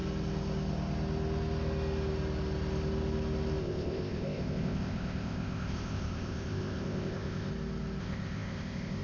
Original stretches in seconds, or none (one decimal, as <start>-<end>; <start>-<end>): 0.0-3.6; 7.5-8.0